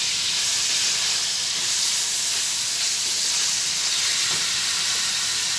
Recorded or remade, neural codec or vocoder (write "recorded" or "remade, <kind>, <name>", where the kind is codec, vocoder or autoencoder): recorded